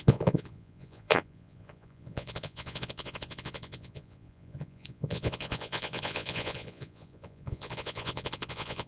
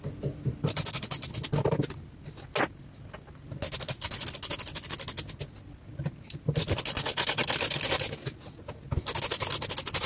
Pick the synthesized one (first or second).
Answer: first